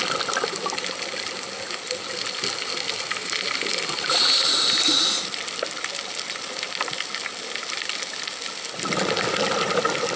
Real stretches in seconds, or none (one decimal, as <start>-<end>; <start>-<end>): 0.0-10.2